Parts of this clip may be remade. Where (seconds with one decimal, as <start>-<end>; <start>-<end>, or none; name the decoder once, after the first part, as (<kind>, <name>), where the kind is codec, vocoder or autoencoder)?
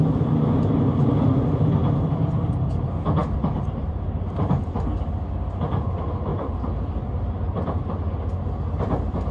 1.8-2.8 (vocoder, BigVGAN v2); 3.2-5.2; 6.3-7.8